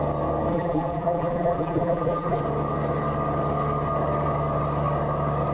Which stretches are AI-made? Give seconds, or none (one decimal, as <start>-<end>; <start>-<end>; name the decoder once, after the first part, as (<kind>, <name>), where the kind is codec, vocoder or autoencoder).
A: 0.5-2.4 (vocoder, BigVGAN v2)